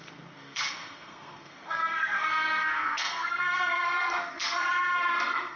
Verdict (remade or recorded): remade